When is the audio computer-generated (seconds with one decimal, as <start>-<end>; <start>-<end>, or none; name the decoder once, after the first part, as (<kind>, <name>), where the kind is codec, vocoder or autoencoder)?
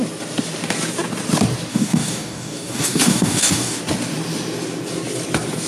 1.7-3.8 (codec, DAC)